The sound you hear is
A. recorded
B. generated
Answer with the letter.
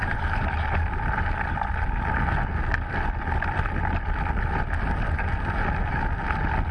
A